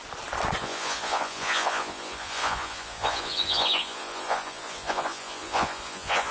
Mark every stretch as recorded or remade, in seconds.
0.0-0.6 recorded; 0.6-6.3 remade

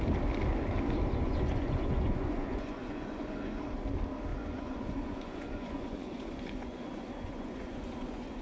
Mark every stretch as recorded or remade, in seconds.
0.0-1.2 recorded; 1.2-3.6 remade; 3.6-4.3 recorded; 4.3-8.4 remade

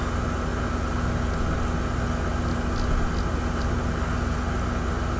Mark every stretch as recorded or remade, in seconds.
0.0-5.2 recorded

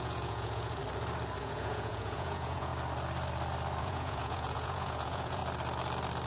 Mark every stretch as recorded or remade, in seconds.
0.0-0.8 remade; 0.8-1.4 recorded; 1.4-2.7 remade; 2.7-3.8 recorded; 3.8-5.4 remade; 5.4-6.3 recorded